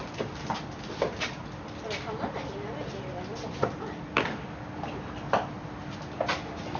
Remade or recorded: recorded